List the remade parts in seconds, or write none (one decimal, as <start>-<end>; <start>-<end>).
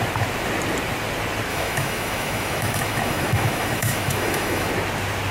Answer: 1.5-4.7